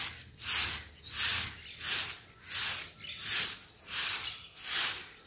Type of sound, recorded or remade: recorded